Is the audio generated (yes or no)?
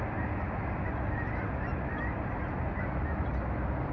no